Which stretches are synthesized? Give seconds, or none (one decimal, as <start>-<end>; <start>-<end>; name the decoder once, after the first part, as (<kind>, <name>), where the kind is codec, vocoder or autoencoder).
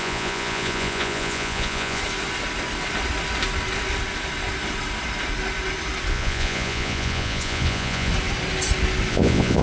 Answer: 0.0-2.0 (vocoder, Vocos); 6.1-8.1; 9.1-9.6